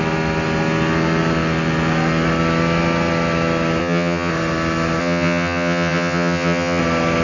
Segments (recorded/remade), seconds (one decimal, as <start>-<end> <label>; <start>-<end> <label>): 0.0-3.8 recorded; 3.8-4.3 remade; 4.3-5.0 recorded; 5.0-6.8 remade; 6.8-7.2 recorded